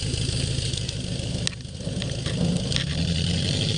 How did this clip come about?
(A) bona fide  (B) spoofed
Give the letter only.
A